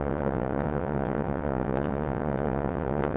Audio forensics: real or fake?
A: fake